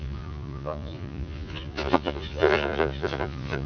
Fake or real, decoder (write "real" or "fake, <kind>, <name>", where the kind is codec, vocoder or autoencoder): fake, vocoder, Vocos